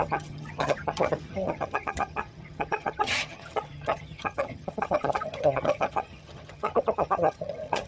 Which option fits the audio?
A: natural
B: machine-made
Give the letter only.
B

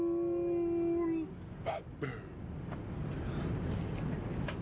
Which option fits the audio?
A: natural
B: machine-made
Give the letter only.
A